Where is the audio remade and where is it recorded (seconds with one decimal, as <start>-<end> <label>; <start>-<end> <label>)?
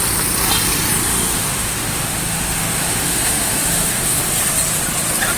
0.0-1.1 recorded; 1.1-4.3 remade; 4.3-5.4 recorded